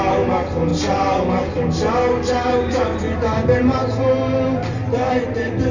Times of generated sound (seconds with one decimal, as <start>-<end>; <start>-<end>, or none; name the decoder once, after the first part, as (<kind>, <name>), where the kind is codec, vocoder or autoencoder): 4.6-5.2 (vocoder, BigVGAN v2)